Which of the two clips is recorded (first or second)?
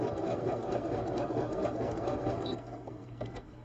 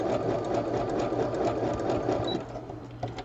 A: second